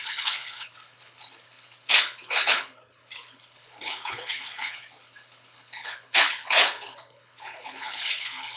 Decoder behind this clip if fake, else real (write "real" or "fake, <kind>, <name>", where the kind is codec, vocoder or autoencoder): fake, codec, HILCodec